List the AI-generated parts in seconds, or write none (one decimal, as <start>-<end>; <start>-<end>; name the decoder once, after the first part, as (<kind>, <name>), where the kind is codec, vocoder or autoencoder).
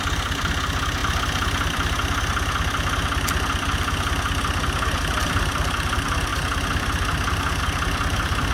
none